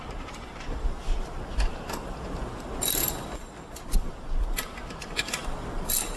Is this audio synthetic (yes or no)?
no